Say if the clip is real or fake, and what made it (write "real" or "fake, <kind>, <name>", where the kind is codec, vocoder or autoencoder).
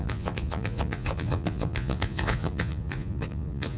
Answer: fake, vocoder, Vocos